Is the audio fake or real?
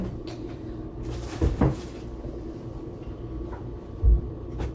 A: real